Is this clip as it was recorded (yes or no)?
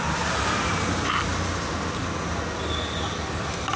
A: yes